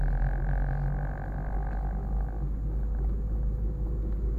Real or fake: real